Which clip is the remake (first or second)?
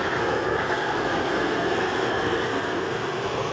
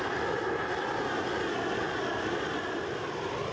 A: first